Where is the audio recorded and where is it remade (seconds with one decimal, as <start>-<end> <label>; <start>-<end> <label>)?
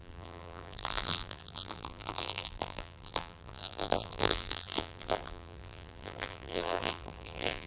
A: 0.0-7.7 remade